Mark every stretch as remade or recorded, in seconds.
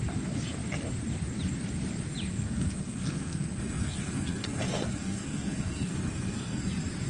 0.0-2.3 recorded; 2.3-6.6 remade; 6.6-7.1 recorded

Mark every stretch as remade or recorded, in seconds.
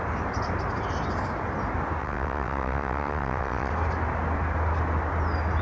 0.0-2.0 recorded; 2.0-3.7 remade; 3.7-5.6 recorded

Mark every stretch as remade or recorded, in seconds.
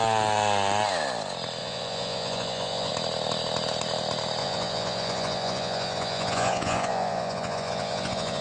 0.0-1.6 recorded; 1.6-2.9 remade; 2.9-4.4 recorded; 4.4-8.4 remade